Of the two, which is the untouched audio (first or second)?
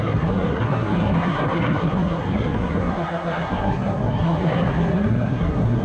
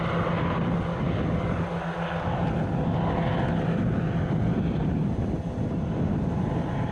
second